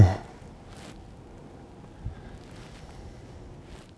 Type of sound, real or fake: real